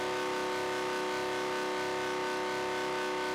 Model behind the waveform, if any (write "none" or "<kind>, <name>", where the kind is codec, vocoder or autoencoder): none